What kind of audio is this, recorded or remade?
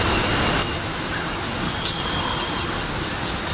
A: recorded